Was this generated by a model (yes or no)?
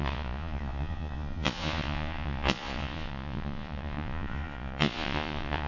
yes